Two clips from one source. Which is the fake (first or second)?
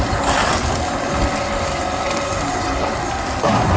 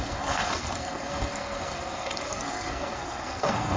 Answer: second